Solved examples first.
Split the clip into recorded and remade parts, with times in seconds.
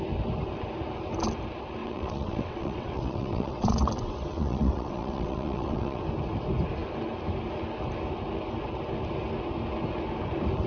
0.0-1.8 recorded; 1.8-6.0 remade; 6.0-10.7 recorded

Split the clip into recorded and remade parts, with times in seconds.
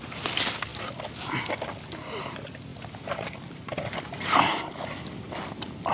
0.0-2.7 recorded; 2.7-3.8 remade; 3.8-5.9 recorded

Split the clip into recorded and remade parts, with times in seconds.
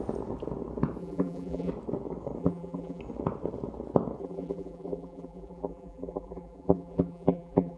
0.0-1.0 recorded; 1.0-1.7 remade; 1.7-2.4 recorded; 2.4-3.0 remade; 3.0-4.2 recorded; 4.2-7.8 remade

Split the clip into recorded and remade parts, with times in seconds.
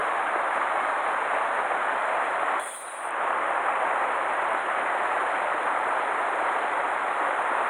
0.0-0.6 remade; 0.6-7.7 recorded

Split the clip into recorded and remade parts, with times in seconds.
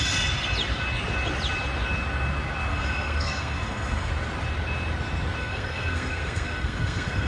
0.0-2.7 recorded; 2.7-4.1 remade; 4.1-5.4 recorded; 5.4-7.3 remade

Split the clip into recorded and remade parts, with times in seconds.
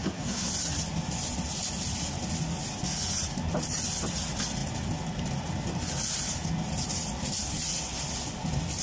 0.0-0.5 remade; 0.5-8.8 recorded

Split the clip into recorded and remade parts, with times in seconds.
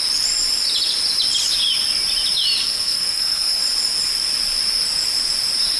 0.0-2.6 recorded; 2.6-3.6 remade; 3.6-5.8 recorded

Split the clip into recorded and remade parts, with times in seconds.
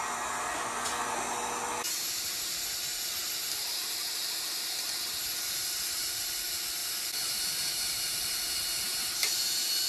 0.0-9.9 recorded